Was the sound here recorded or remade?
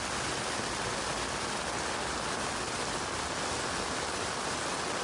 recorded